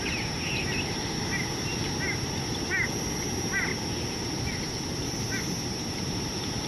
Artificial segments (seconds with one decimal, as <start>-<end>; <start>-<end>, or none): 3.7-5.4